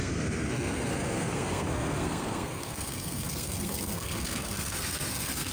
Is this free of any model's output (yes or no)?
no